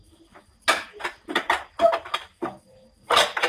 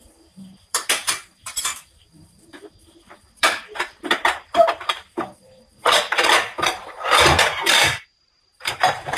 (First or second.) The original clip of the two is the first